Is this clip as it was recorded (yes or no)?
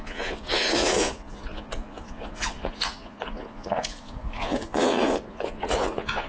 no